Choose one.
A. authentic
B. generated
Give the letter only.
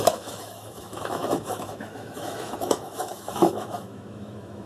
B